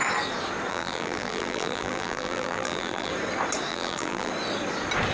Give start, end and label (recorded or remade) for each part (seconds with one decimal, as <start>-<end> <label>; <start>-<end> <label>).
0.0-0.7 recorded; 0.7-3.1 remade; 3.1-3.7 recorded; 3.7-4.3 remade; 4.3-5.1 recorded